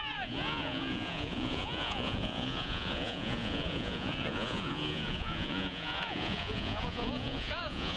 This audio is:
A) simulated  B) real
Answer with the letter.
A